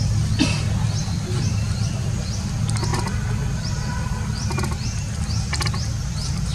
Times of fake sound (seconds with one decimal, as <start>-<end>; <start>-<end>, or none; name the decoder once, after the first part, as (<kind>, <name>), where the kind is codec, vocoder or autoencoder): none